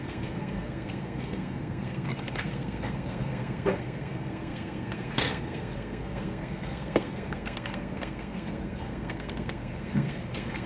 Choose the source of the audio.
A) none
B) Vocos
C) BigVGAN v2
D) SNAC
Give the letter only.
D